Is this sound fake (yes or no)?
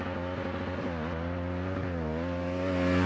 no